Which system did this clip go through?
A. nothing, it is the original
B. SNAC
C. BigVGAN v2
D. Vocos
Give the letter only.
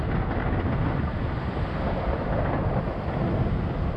A